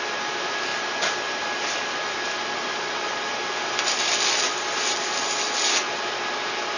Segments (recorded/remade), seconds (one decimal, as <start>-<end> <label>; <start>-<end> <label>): 0.0-6.8 recorded